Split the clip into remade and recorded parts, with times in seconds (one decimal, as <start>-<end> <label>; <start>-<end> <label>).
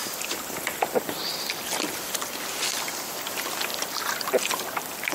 0.0-5.1 recorded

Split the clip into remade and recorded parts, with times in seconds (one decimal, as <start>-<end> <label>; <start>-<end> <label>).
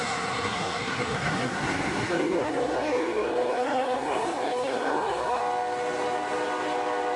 0.0-5.4 remade; 5.4-7.2 recorded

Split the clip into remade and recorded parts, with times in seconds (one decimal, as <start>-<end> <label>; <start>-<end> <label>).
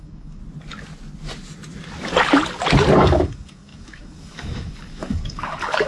0.0-0.4 remade; 0.4-3.0 recorded; 3.0-5.9 remade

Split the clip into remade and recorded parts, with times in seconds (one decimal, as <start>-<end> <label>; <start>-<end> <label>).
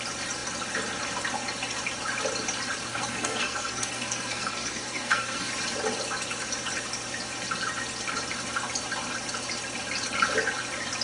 0.0-2.9 recorded; 2.9-5.5 remade; 5.5-11.0 recorded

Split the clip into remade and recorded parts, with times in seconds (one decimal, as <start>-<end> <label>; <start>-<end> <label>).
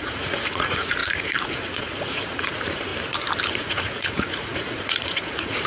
0.0-2.9 remade; 2.9-3.6 recorded; 3.6-5.7 remade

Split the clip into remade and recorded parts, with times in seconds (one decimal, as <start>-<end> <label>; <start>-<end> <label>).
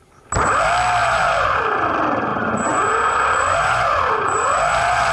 0.0-1.0 recorded; 1.0-1.6 remade; 1.6-2.3 recorded; 2.3-5.1 remade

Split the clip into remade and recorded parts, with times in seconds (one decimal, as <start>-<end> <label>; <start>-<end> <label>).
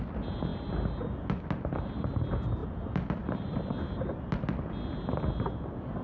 0.0-2.6 recorded; 2.6-3.7 remade; 3.7-6.0 recorded